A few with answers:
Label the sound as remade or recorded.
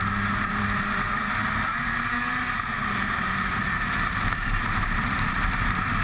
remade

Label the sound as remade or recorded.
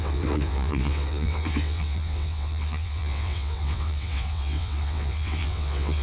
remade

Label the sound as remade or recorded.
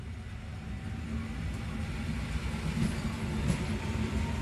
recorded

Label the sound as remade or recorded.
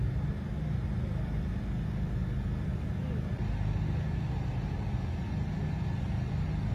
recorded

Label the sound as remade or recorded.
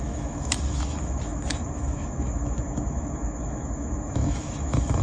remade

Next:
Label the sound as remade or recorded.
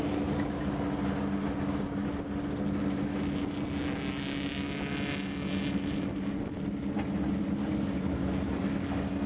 recorded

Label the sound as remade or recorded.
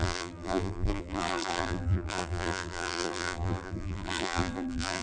remade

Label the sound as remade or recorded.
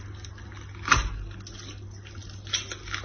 recorded